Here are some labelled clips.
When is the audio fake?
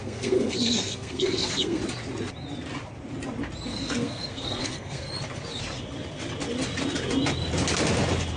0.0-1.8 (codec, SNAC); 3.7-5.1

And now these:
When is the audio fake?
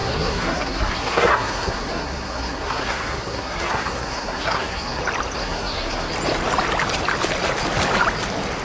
0.0-5.0 (codec, SNAC); 5.4-6.1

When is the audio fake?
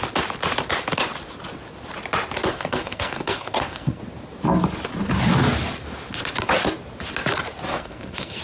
2.5-4.0 (codec, SNAC); 7.7-8.4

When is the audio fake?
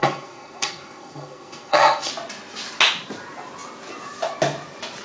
0.0-2.1 (codec, SNAC)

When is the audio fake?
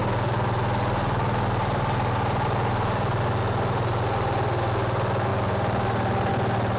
none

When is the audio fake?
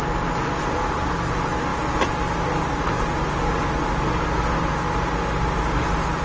none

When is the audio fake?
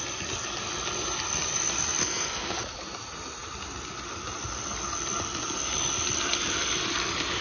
2.0-2.6 (codec, SNAC)